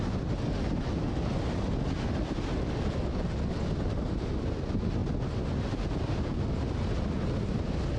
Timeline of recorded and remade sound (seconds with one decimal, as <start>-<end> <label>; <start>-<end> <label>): 0.0-8.0 recorded